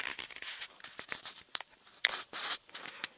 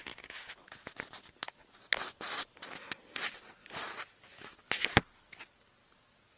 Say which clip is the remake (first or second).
first